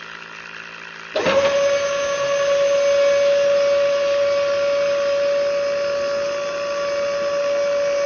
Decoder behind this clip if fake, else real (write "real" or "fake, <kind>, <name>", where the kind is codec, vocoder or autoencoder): real